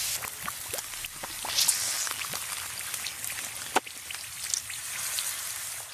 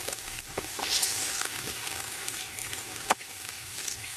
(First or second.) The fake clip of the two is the second